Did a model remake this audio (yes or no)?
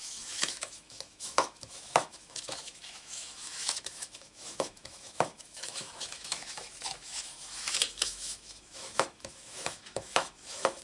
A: yes